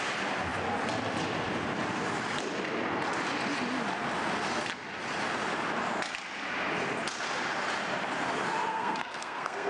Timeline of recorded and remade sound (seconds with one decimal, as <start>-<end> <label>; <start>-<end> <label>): 0.0-8.7 recorded; 8.7-9.7 remade